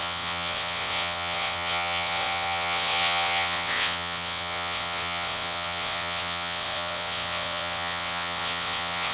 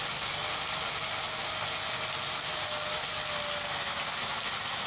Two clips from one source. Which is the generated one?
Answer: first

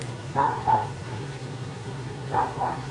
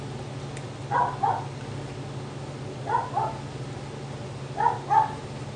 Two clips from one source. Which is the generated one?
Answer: first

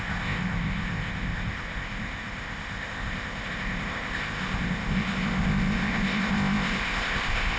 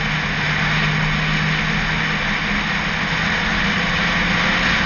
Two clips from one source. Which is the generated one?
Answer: first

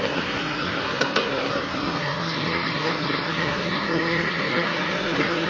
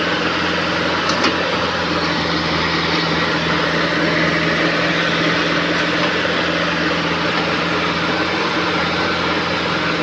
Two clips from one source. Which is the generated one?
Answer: first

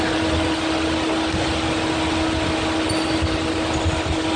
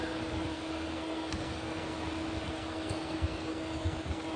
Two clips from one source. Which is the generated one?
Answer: second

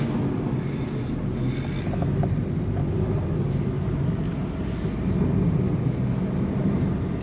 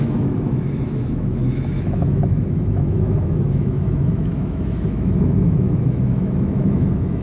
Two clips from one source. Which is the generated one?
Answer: second